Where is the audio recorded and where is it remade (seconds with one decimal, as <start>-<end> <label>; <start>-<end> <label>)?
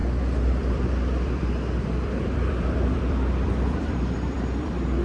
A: 0.0-5.0 remade